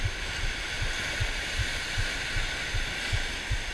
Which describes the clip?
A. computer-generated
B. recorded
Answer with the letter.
B